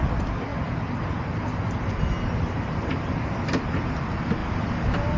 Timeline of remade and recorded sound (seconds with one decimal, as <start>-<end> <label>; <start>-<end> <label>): 0.0-5.2 recorded